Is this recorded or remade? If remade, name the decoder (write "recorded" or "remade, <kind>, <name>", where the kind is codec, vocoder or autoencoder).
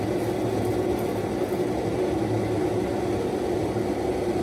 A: recorded